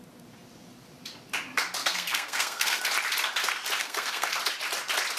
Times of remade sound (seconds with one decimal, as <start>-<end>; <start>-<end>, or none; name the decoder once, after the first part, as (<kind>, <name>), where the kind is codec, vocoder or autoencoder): 1.8-2.8 (codec, SNAC); 3.8-4.3